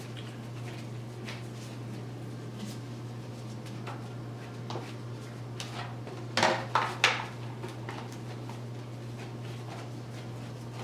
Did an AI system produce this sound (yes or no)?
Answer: no